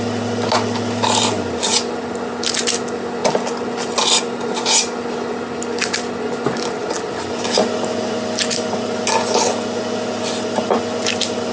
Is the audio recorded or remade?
recorded